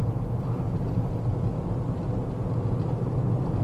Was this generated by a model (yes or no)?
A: no